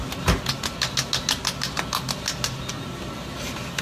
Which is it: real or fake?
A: real